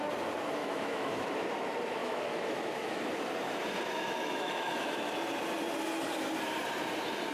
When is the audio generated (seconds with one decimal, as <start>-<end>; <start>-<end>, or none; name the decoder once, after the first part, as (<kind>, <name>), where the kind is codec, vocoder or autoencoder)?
0.6-1.3 (autoencoder, DAC-VAE); 2.0-3.1; 4.2-5.1